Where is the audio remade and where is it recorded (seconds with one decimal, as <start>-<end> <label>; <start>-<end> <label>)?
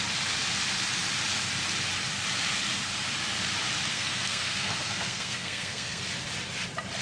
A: 0.0-3.9 recorded; 3.9-6.0 remade; 6.0-7.0 recorded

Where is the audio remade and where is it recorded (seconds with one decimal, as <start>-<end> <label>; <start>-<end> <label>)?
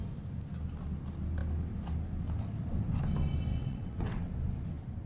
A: 0.0-3.5 recorded; 3.5-4.3 remade; 4.3-5.1 recorded